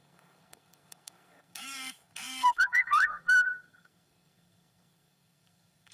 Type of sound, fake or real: fake